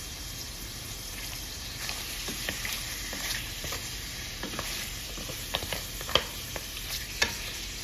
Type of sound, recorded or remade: remade